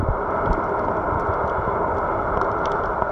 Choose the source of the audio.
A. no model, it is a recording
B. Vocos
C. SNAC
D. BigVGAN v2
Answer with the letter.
A